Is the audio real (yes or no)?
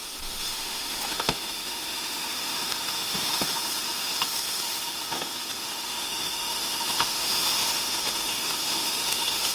no